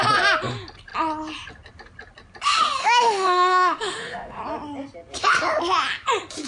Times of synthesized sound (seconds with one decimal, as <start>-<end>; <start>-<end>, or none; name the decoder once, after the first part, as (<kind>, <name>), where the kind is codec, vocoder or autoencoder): 2.8-4.4 (autoencoder, DAC-VAE)